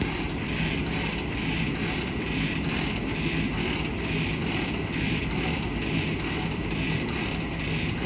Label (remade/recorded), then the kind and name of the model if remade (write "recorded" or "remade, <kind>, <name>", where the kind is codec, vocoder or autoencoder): recorded